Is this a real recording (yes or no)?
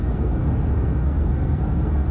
no